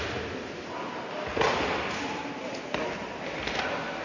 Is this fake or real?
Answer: real